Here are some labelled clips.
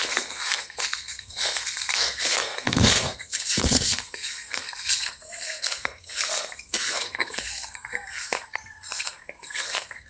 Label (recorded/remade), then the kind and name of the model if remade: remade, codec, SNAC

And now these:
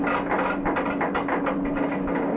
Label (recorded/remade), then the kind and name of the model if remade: recorded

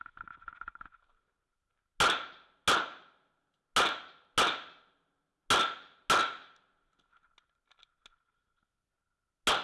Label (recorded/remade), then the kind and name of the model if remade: recorded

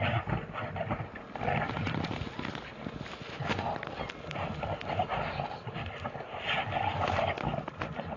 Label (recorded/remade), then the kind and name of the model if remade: recorded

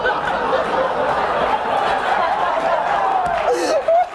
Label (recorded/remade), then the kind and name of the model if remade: recorded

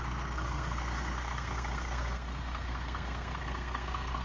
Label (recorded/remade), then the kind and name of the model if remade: remade, codec, SNAC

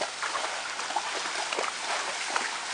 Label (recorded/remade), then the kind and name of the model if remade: recorded